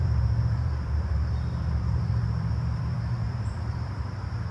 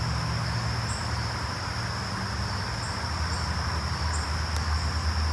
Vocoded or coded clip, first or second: first